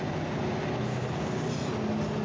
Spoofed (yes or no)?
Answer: no